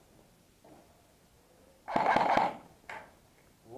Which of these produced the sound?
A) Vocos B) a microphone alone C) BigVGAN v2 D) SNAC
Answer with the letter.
B